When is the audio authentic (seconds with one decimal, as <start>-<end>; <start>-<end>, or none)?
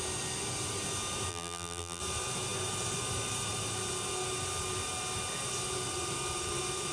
0.0-1.3; 2.0-6.9